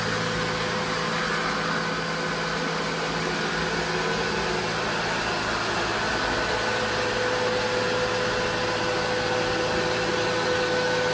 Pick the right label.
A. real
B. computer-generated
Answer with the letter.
A